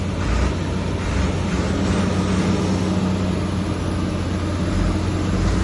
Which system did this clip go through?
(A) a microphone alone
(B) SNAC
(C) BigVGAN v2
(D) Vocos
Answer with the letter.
A